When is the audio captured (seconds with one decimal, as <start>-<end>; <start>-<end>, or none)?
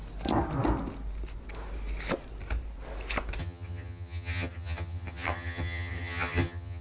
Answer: 0.0-3.4